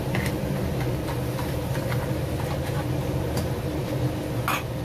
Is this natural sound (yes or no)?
yes